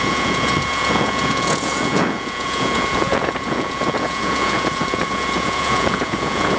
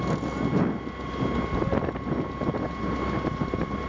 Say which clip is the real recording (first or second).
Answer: second